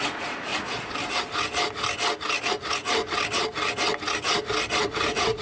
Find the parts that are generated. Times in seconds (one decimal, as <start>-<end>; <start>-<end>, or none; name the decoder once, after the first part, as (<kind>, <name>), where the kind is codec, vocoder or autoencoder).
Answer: 0.0-0.5 (vocoder, Vocos); 2.5-3.0; 4.8-5.4